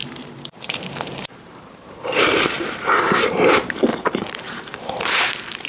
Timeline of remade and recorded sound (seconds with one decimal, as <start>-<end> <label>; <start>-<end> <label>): 0.0-3.3 remade; 3.3-3.9 recorded; 3.9-5.3 remade; 5.3-5.7 recorded